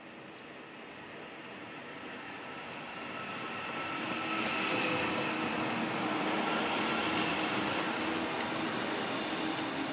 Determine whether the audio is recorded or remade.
recorded